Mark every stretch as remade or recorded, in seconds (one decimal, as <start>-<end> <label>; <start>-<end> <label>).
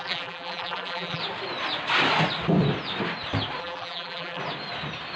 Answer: 0.0-1.2 remade; 1.2-3.6 recorded; 3.6-4.4 remade; 4.4-5.2 recorded